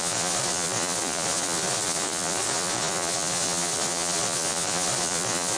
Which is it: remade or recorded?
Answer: remade